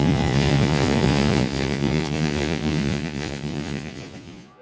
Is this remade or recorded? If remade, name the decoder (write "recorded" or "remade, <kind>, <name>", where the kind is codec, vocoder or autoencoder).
remade, vocoder, Vocos